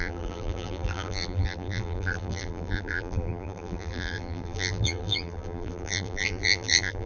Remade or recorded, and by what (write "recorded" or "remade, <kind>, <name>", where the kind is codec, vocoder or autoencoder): remade, vocoder, BigVGAN v2